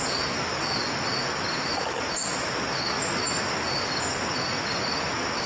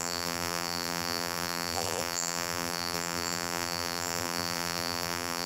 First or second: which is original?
first